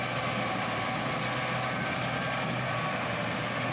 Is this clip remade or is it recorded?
recorded